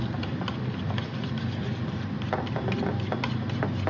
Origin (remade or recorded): recorded